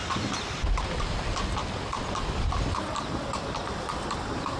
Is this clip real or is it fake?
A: real